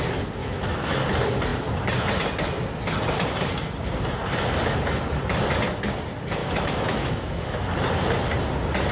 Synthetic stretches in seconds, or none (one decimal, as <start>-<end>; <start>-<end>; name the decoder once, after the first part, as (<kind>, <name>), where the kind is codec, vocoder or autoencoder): 0.4-1.0 (autoencoder, DAC-VAE); 6.4-7.7

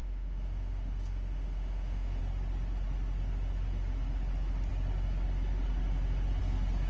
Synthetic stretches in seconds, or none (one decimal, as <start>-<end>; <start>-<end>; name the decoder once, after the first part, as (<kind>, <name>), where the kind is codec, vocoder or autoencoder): 0.0-2.2 (autoencoder, DAC-VAE)

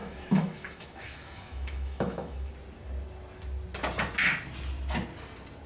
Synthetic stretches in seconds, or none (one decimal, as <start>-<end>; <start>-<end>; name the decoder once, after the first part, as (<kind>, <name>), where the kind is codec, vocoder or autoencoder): 0.0-2.5 (autoencoder, DAC-VAE)

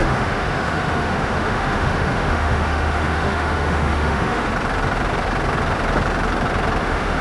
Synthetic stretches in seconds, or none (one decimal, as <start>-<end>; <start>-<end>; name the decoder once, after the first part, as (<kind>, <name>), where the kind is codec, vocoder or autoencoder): 0.0-4.5 (autoencoder, DAC-VAE); 6.8-7.2